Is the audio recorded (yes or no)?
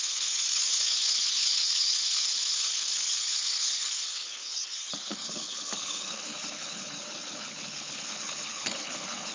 no